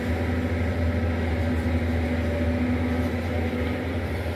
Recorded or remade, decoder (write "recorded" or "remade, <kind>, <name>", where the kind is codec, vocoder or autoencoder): recorded